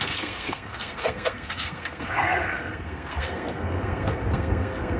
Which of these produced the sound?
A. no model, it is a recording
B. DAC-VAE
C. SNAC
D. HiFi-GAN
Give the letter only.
C